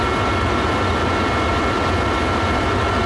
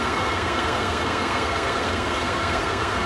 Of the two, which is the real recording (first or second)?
first